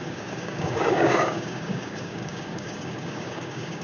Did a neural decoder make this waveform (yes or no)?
yes